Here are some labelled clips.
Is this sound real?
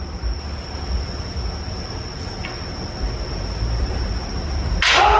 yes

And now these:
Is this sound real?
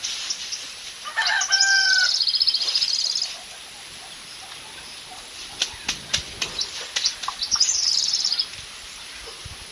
yes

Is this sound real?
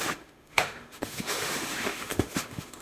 no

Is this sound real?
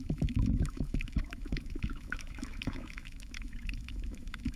no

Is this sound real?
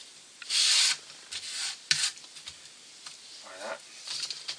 yes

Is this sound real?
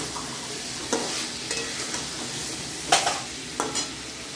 yes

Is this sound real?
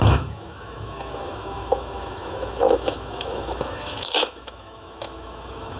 no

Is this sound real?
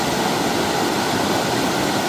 yes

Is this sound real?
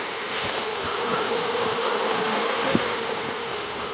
no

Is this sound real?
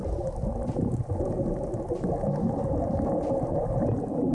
yes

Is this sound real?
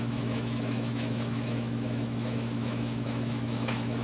no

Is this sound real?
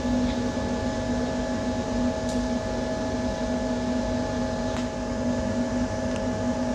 yes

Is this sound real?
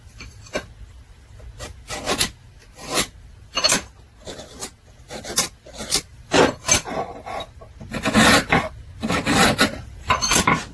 yes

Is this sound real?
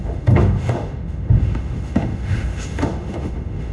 no